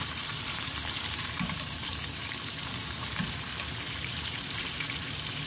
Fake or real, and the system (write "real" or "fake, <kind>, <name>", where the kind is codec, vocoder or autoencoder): fake, vocoder, BigVGAN v2